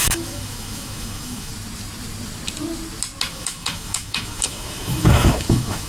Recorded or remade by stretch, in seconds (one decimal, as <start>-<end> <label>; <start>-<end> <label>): 0.0-1.5 remade; 1.5-3.3 recorded; 3.3-5.9 remade